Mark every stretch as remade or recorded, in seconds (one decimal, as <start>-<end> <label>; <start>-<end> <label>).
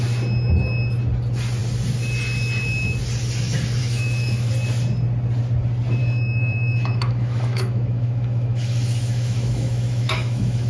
0.0-3.8 recorded; 3.8-4.5 remade; 4.5-6.0 recorded; 6.0-10.7 remade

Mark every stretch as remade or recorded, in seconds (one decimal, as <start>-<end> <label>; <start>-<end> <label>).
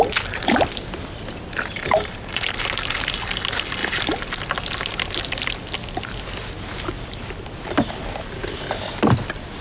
0.0-9.6 recorded